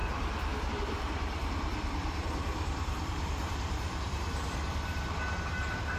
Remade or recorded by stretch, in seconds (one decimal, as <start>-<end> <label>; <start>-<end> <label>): 0.0-0.7 recorded; 0.7-6.0 remade